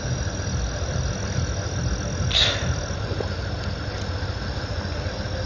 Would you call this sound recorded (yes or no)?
yes